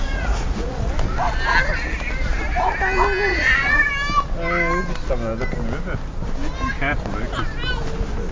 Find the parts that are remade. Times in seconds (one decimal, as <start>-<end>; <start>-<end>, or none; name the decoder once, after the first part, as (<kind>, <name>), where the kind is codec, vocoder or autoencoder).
0.0-0.9 (vocoder, Vocos); 3.3-3.9